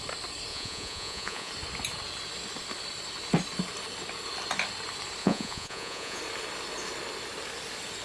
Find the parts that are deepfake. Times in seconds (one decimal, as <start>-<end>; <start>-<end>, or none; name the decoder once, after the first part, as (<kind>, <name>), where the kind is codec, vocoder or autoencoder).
0.5-1.5 (vocoder, Vocos); 5.2-6.2